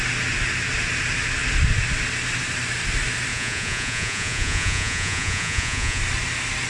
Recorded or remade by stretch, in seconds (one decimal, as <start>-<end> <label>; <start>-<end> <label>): 0.0-3.3 recorded; 3.3-6.0 remade; 6.0-6.7 recorded